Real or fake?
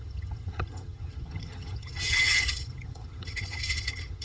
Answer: fake